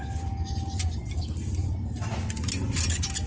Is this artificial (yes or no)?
no